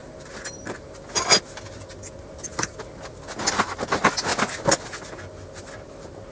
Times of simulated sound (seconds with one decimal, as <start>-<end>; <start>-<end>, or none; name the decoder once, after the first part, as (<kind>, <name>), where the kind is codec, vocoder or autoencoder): none